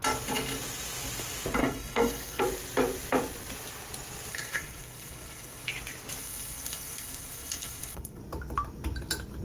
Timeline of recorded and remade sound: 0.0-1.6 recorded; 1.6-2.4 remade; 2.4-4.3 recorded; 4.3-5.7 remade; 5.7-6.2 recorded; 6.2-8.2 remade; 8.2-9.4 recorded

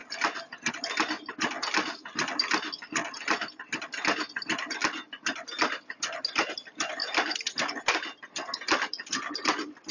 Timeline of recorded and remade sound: 0.0-9.9 recorded

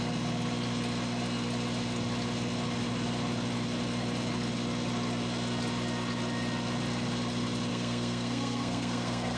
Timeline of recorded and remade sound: 0.0-7.7 recorded; 7.7-9.4 remade

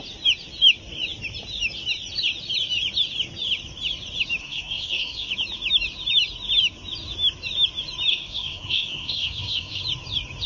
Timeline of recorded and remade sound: 0.0-4.4 recorded; 4.4-5.3 remade; 5.3-8.1 recorded; 8.1-9.8 remade; 9.8-10.5 recorded

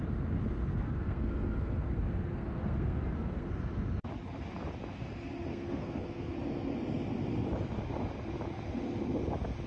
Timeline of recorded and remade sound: 0.0-0.7 recorded; 0.7-3.5 remade; 3.5-5.5 recorded; 5.5-6.3 remade; 6.3-9.7 recorded

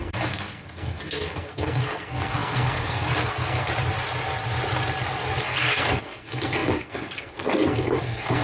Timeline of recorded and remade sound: 0.0-3.7 remade; 3.7-5.4 recorded; 5.4-8.4 remade